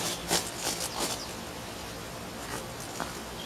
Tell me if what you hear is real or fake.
real